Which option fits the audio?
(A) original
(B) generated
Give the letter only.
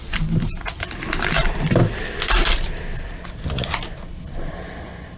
A